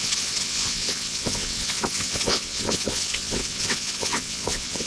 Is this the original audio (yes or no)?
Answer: no